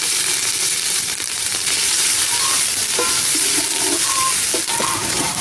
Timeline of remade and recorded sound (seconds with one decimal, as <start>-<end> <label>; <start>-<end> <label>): 0.0-3.2 remade; 3.2-4.7 recorded; 4.7-5.4 remade